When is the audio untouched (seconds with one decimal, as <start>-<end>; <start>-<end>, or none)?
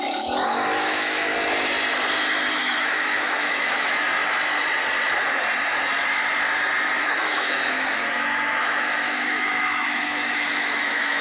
1.3-2.5; 4.2-7.0